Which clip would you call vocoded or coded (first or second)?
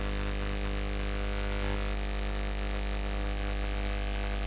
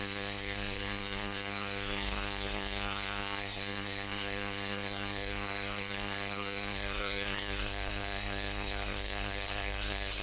second